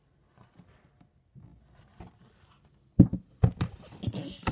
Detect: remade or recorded recorded